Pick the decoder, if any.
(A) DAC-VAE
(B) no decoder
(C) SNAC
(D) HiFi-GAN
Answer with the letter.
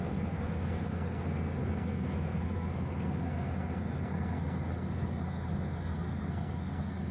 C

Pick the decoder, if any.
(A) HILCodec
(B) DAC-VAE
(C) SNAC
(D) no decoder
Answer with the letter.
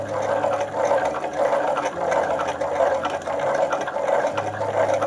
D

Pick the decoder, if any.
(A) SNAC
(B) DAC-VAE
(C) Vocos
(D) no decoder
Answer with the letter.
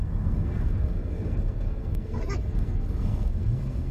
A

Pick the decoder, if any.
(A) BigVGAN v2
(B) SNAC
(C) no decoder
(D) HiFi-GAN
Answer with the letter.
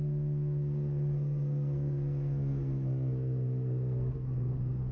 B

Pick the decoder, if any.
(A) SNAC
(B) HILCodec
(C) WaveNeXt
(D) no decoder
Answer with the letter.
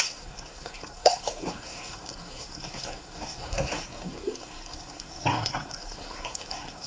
A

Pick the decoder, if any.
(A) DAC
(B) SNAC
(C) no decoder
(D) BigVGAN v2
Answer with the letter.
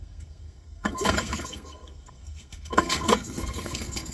B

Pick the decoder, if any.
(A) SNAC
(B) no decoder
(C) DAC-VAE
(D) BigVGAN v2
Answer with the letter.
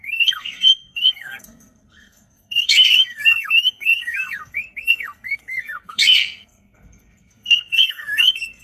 A